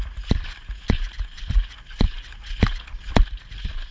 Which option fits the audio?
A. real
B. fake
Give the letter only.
A